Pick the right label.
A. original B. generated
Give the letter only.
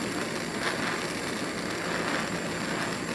A